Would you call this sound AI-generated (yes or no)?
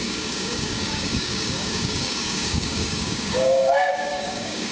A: yes